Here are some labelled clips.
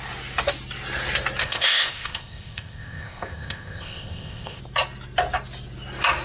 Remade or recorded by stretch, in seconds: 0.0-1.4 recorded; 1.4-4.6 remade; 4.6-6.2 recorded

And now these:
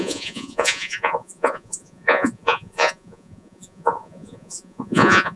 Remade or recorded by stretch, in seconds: 0.0-5.4 remade

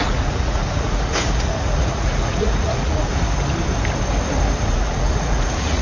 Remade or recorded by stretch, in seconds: 0.0-3.1 remade; 3.1-4.6 recorded; 4.6-5.8 remade

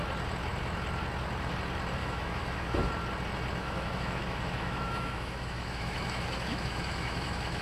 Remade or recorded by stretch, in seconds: 0.0-2.0 recorded; 2.0-2.9 remade; 2.9-3.6 recorded; 3.6-7.6 remade

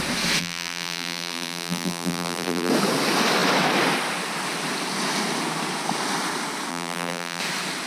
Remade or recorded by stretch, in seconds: 0.0-0.4 recorded; 0.4-2.7 remade; 2.7-6.7 recorded; 6.7-7.4 remade; 7.4-7.9 recorded

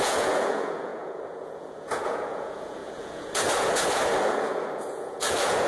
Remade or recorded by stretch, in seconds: 0.0-5.7 remade